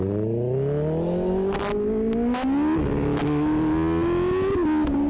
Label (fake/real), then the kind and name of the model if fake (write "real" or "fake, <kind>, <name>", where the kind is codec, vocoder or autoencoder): real